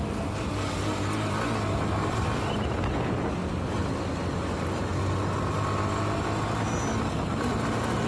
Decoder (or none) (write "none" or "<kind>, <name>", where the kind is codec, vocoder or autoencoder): none